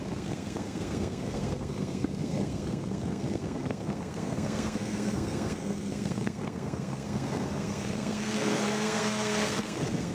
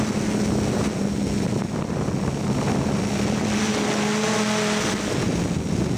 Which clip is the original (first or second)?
second